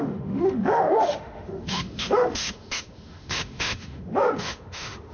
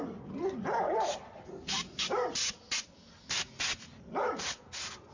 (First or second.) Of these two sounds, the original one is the second